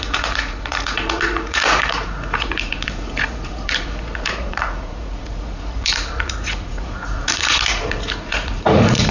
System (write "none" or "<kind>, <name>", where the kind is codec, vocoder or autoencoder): vocoder, Vocos